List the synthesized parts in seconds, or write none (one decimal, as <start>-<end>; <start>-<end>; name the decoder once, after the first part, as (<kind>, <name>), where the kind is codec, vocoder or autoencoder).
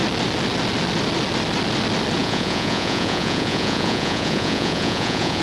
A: 2.2-5.4 (vocoder, Vocos)